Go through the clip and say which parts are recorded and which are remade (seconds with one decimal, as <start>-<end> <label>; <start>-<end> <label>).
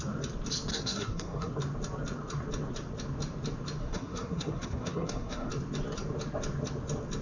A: 0.0-0.7 recorded; 0.7-1.5 remade; 1.5-3.8 recorded; 3.8-5.5 remade; 5.5-7.2 recorded